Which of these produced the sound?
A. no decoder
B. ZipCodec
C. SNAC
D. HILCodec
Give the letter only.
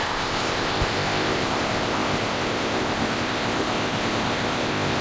B